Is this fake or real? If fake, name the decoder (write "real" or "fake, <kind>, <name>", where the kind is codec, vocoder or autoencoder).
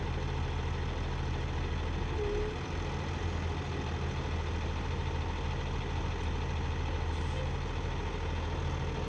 real